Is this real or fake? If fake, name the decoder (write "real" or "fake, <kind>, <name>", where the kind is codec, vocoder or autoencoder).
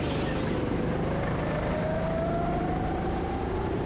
real